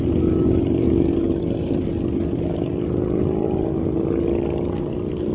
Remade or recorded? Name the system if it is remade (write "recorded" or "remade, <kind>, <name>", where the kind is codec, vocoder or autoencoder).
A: recorded